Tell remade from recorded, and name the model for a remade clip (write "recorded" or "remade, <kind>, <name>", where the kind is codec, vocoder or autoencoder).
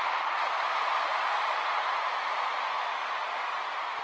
recorded